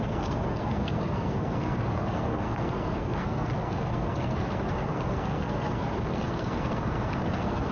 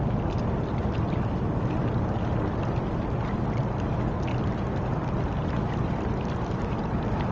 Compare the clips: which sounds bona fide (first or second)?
second